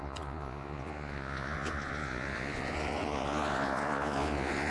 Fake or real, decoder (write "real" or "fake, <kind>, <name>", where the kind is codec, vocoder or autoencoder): fake, vocoder, Vocos